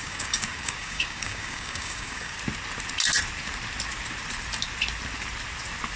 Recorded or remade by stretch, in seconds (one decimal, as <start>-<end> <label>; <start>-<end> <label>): 0.0-2.4 remade; 2.4-6.0 recorded